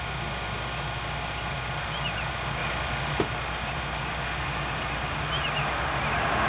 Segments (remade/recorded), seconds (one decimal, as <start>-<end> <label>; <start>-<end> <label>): 0.0-6.5 recorded